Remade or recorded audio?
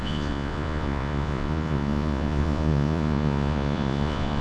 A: remade